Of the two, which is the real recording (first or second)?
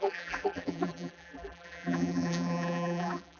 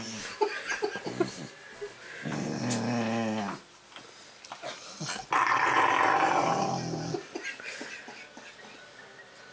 second